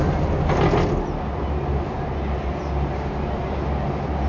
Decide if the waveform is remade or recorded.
recorded